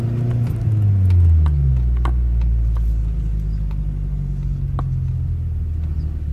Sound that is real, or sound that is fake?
real